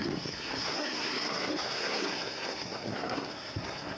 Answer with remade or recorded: remade